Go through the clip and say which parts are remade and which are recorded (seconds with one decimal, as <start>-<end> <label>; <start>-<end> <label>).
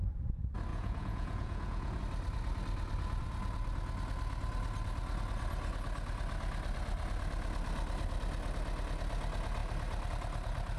0.0-0.7 recorded; 0.7-2.0 remade; 2.0-10.8 recorded